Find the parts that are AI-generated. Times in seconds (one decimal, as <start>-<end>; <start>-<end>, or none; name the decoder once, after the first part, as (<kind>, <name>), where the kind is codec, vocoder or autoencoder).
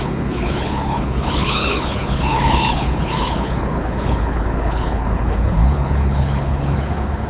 0.0-7.3 (codec, HILCodec)